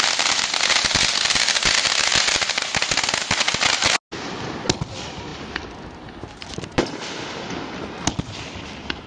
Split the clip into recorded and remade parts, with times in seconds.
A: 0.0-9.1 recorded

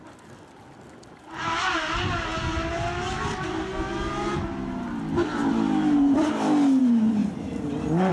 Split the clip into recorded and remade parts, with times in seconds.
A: 0.0-8.1 recorded

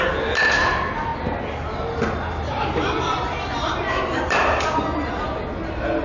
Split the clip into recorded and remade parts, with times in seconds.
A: 0.0-6.0 recorded

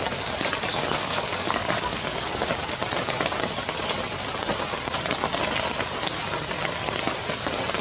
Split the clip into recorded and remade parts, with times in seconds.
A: 0.0-0.7 recorded; 0.7-2.5 remade; 2.5-7.8 recorded

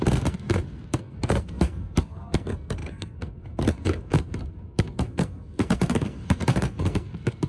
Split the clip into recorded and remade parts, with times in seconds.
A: 0.0-7.5 remade

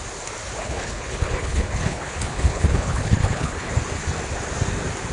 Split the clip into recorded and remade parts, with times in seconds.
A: 0.0-0.6 recorded; 0.6-3.7 remade; 3.7-5.1 recorded

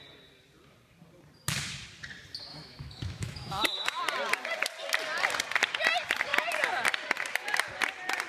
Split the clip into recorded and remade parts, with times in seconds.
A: 0.0-2.5 recorded; 2.5-4.0 remade; 4.0-8.3 recorded